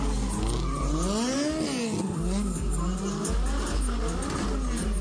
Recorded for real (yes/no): yes